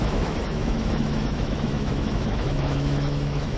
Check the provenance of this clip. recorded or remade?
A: remade